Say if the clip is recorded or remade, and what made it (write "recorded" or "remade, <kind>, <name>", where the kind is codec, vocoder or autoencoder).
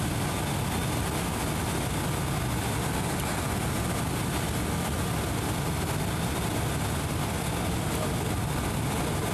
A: recorded